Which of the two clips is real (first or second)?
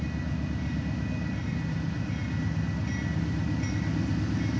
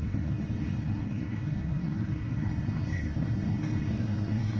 first